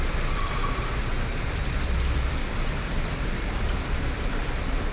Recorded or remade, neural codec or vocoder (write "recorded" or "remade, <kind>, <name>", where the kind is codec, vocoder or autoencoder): remade, vocoder, BigVGAN v2